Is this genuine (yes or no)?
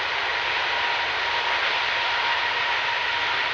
yes